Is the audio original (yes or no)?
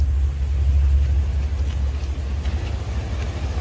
yes